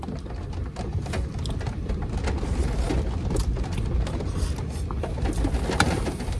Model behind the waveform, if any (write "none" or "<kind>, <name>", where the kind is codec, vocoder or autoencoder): none